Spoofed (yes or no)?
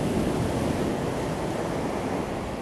no